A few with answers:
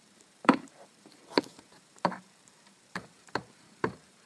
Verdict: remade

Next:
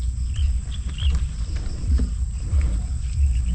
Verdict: recorded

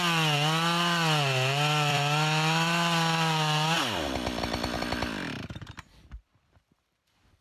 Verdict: remade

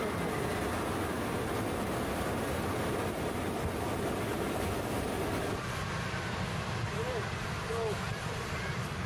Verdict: remade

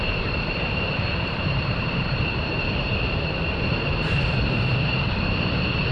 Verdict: remade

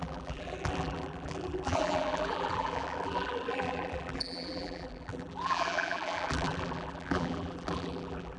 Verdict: remade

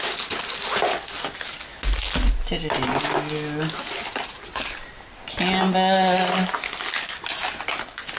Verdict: recorded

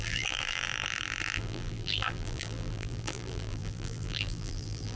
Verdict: remade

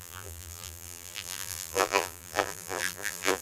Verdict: remade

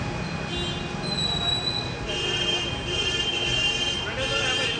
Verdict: recorded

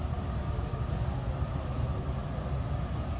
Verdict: recorded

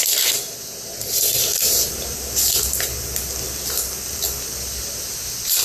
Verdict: recorded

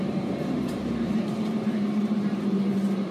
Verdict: remade